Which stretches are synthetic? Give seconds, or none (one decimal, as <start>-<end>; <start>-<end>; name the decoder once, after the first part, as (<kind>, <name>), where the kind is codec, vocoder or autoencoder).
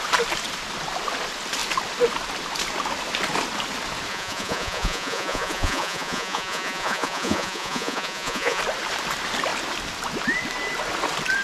4.1-8.6 (vocoder, Vocos)